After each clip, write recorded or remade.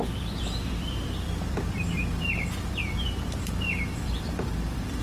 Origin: remade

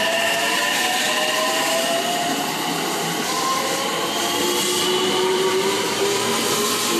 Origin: recorded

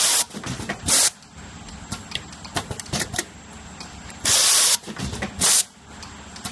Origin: recorded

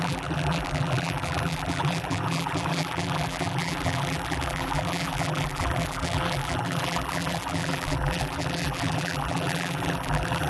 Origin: remade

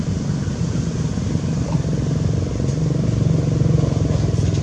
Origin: recorded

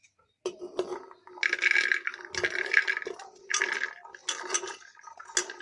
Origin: recorded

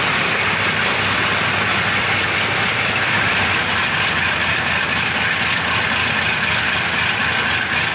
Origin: recorded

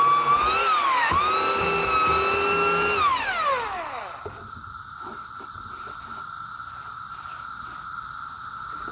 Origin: recorded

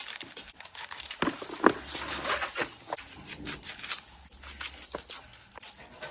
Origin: recorded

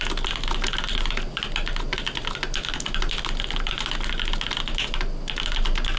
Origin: recorded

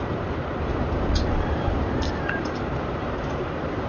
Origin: remade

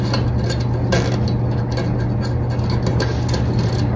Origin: recorded